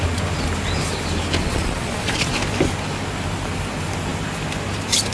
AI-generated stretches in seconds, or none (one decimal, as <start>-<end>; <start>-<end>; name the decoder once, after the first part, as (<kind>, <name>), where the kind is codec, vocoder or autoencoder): 1.4-2.3 (vocoder, Vocos)